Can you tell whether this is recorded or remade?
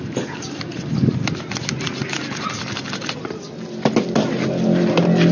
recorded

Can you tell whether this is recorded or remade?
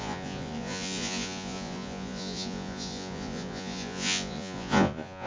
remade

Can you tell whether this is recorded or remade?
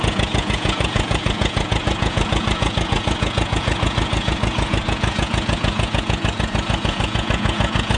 remade